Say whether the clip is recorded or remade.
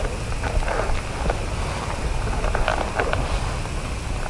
recorded